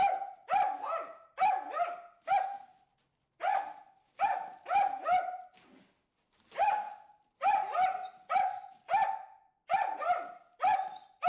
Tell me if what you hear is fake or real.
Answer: real